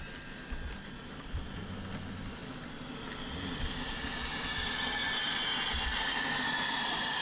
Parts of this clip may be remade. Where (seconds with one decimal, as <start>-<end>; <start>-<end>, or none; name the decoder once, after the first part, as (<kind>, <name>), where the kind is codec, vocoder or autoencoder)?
0.0-2.4 (vocoder, BigVGAN v2); 6.7-7.2

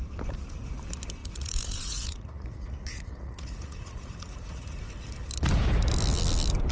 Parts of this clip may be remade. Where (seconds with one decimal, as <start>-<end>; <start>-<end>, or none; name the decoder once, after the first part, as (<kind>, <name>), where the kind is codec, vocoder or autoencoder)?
1.2-4.8 (vocoder, Vocos)